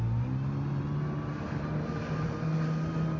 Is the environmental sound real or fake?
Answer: real